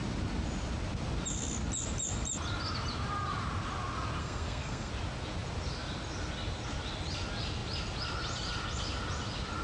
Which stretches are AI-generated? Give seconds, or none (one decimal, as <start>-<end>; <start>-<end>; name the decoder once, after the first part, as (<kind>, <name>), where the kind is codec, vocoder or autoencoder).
4.2-4.9 (codec, SNAC)